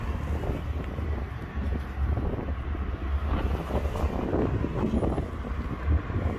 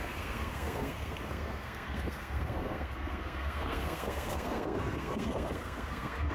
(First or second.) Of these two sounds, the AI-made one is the second